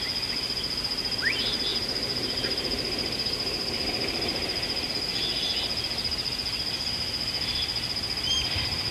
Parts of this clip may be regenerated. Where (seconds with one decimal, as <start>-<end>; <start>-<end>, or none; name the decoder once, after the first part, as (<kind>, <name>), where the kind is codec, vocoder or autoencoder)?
1.7-4.9 (vocoder, BigVGAN v2)